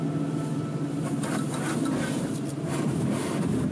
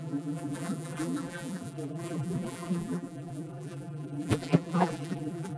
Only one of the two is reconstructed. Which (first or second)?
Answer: second